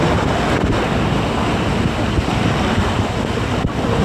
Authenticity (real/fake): real